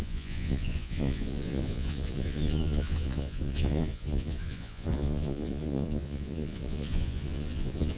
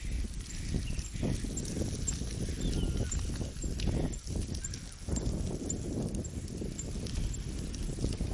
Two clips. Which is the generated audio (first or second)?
first